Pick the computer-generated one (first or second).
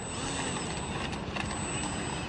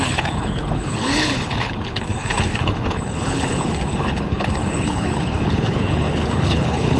second